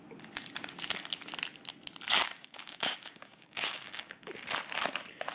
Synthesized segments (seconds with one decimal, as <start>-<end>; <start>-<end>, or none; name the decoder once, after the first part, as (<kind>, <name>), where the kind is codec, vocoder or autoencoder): 2.2-4.3 (codec, DAC)